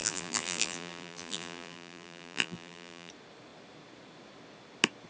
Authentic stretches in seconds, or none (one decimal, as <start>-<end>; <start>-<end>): 3.1-5.1